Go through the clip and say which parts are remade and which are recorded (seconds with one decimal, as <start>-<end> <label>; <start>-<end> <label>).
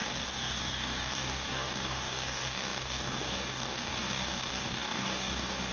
0.0-5.7 remade